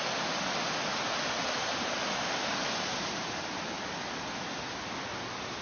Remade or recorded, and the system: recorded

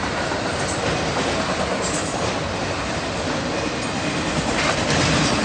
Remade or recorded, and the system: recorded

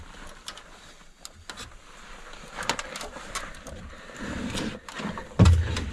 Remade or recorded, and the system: recorded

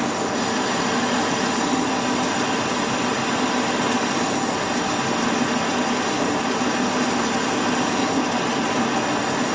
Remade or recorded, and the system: recorded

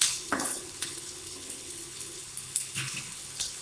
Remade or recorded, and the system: remade, codec, HILCodec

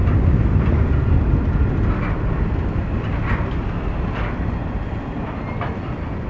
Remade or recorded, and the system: recorded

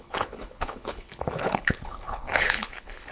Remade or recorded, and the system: remade, codec, HILCodec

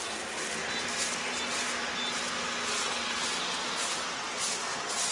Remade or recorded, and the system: recorded